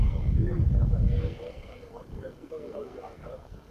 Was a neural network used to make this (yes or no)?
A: yes